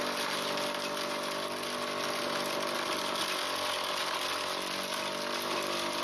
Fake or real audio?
real